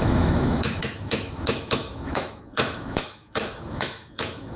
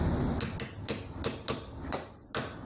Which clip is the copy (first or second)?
first